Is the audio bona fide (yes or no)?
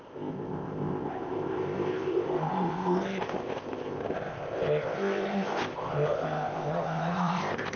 no